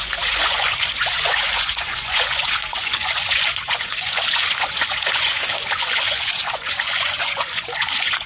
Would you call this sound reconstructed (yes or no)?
yes